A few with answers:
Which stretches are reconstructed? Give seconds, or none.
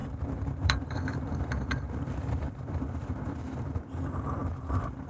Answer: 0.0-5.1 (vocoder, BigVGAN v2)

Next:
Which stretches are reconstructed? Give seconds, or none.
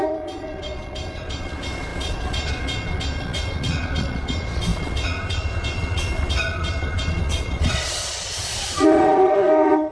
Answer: 0.0-9.9 (vocoder, Vocos)